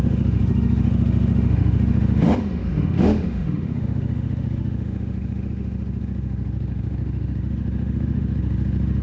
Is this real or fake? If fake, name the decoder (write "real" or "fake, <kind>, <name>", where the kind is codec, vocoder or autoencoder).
fake, autoencoder, DAC-VAE